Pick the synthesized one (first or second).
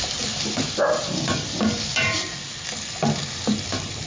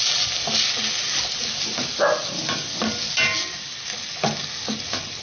first